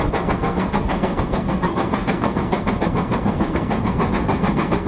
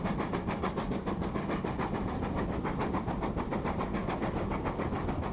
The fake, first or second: first